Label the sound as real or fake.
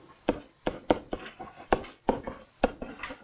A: fake